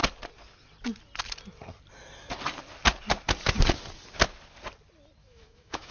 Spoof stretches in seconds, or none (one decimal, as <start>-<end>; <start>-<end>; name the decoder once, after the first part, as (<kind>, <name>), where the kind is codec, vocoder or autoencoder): 5.2-5.9 (autoencoder, DAC-VAE)